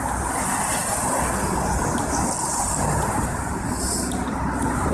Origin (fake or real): real